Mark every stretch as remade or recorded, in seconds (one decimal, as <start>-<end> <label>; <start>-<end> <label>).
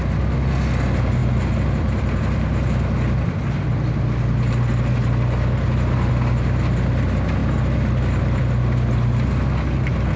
0.0-1.2 recorded; 1.2-6.1 remade; 6.1-7.4 recorded; 7.4-8.4 remade; 8.4-10.2 recorded